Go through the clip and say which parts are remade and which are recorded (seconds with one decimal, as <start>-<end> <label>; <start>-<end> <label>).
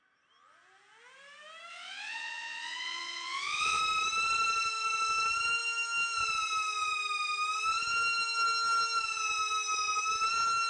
0.0-1.7 recorded; 1.7-3.8 remade; 3.8-10.7 recorded